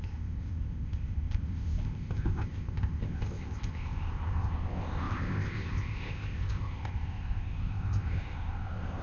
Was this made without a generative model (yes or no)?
no